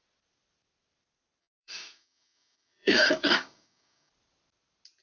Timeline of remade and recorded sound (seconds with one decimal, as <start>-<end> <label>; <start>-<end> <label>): 0.0-1.4 recorded; 1.4-4.1 remade; 4.1-5.0 recorded